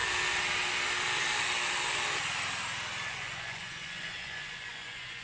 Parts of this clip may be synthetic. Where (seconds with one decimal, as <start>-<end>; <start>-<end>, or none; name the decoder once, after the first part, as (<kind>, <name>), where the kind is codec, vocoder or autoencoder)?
3.1-5.2 (vocoder, Vocos)